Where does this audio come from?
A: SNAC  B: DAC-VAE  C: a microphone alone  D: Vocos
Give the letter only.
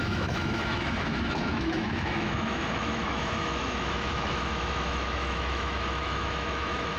B